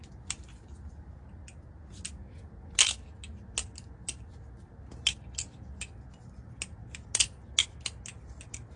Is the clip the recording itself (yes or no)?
yes